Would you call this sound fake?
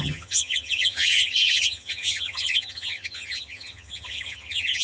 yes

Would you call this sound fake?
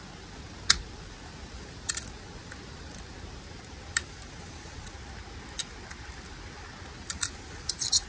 no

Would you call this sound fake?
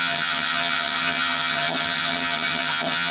yes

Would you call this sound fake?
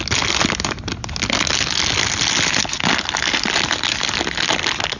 no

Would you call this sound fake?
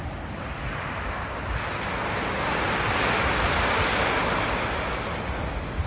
no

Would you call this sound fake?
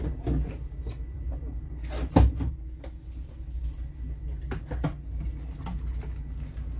no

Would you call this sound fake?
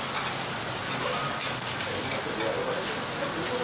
no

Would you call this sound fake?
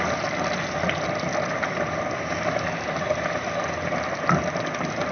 no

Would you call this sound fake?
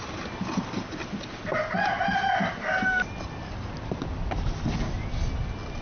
no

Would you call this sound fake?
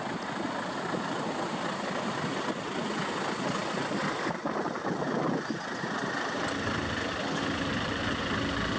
no